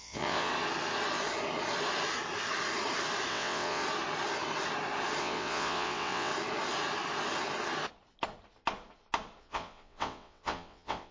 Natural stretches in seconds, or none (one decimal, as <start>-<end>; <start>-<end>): 0.5-3.3; 3.8-5.2; 6.3-9.4